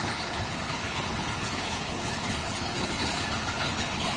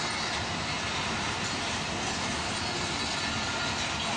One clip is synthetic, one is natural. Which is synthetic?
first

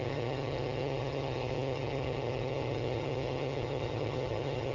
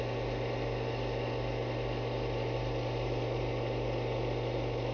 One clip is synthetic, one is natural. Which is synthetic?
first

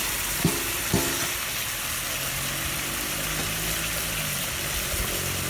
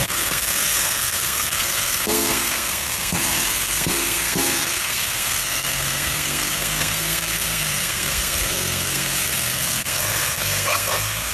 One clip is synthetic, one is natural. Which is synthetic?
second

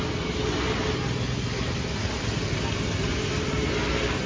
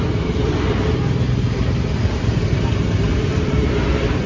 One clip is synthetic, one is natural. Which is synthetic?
second